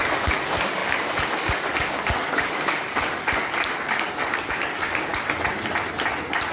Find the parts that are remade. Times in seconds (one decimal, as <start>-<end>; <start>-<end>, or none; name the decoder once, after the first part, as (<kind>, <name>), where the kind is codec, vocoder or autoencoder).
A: 0.0-5.1 (codec, DAC)